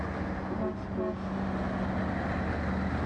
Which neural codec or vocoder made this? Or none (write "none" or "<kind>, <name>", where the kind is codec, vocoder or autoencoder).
none